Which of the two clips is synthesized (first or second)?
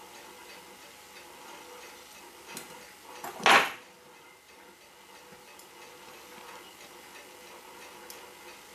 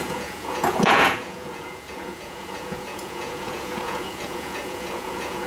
second